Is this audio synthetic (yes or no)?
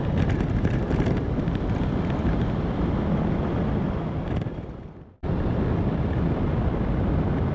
no